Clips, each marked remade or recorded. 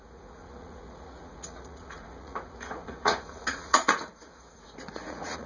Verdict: remade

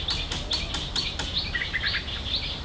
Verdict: recorded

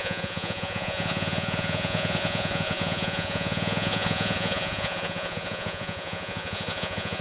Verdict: remade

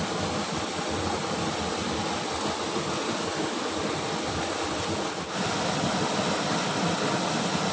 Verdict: recorded